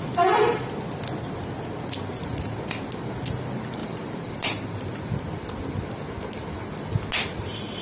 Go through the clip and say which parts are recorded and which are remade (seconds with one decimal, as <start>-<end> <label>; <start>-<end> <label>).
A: 0.0-3.8 recorded; 3.8-4.3 remade; 4.3-7.8 recorded